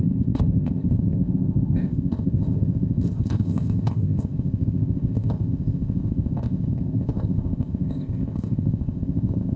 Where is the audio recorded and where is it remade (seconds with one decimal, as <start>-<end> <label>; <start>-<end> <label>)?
0.0-9.6 remade